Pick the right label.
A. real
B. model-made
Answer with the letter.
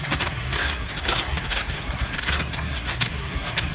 B